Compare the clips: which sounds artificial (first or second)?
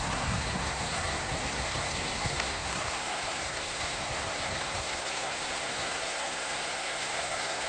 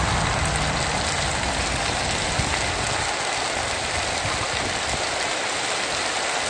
first